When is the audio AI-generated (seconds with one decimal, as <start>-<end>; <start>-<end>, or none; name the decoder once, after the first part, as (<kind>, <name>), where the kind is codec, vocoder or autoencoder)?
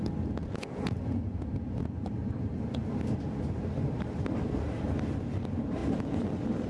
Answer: 0.4-1.4 (vocoder, Vocos)